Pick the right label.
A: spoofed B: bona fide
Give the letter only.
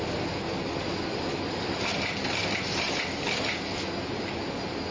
B